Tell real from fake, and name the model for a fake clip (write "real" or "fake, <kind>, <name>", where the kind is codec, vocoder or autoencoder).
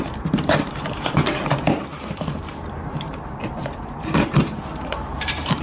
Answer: fake, vocoder, BigVGAN v2